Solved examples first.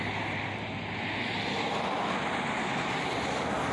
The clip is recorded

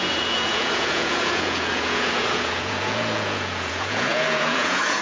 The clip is remade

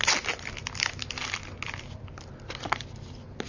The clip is recorded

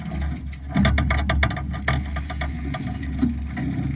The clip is recorded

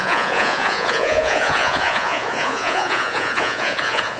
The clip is remade